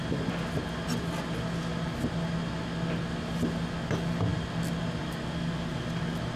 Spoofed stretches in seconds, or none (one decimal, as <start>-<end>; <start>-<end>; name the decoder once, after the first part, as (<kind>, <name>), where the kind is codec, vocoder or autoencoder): none